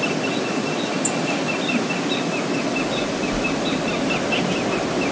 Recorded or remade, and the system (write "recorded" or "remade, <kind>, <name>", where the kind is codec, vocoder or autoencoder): recorded